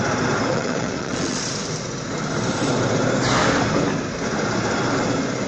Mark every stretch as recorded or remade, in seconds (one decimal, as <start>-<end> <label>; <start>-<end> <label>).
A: 0.0-0.5 recorded; 0.5-1.4 remade; 1.4-5.5 recorded